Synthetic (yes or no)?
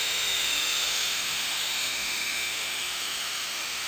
yes